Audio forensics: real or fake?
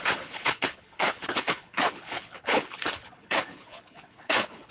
fake